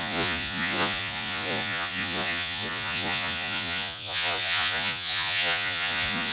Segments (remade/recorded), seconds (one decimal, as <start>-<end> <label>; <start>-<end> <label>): 0.0-6.3 remade